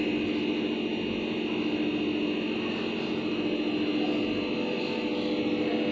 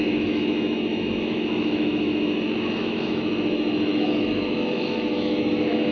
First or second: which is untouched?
first